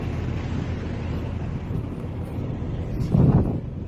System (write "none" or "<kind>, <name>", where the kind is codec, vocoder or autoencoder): none